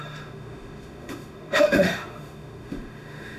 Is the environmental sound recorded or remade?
remade